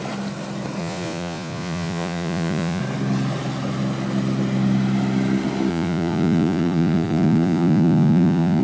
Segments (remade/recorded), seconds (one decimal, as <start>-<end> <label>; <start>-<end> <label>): 0.0-0.8 recorded; 0.8-2.8 remade; 2.8-5.7 recorded; 5.7-8.6 remade